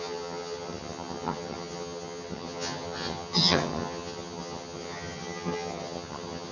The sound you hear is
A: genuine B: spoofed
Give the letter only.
B